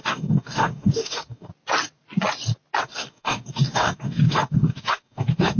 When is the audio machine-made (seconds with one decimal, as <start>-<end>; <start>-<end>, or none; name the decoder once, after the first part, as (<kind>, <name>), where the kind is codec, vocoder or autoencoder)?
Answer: 0.0-1.5 (codec, DAC); 2.8-5.6